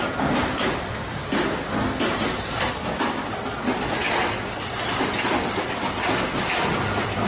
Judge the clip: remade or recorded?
recorded